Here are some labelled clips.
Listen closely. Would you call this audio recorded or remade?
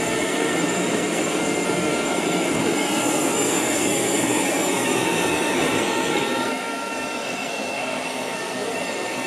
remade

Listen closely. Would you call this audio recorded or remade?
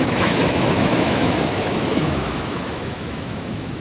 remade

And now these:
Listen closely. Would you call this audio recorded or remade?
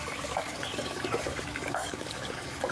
remade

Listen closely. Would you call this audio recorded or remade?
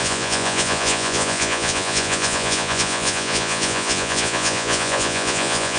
remade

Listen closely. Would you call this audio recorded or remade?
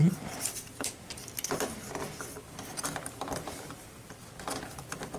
remade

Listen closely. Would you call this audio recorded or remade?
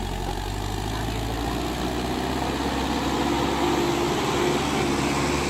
recorded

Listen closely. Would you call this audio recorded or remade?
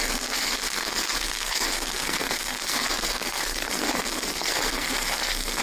remade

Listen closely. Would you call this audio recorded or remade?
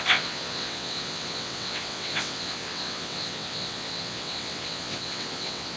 remade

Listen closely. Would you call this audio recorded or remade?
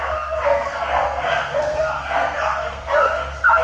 remade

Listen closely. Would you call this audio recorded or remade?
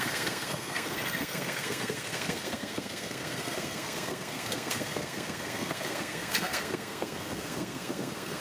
remade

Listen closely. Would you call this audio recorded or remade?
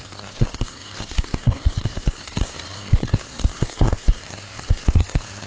remade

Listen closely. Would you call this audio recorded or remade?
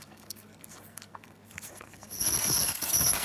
remade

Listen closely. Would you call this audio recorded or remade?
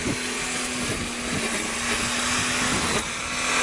recorded